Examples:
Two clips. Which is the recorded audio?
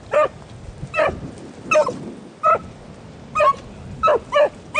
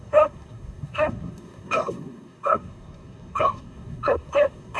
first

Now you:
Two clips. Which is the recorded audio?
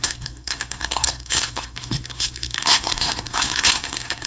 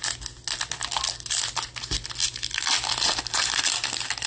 second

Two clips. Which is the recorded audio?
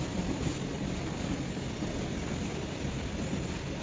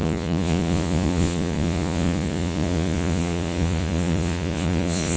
first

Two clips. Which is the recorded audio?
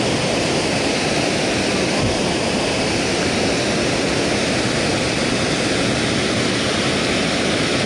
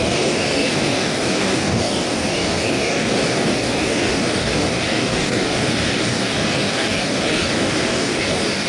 first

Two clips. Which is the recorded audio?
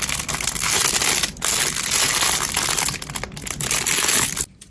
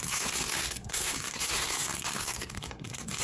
first